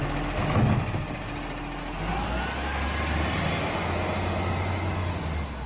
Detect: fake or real real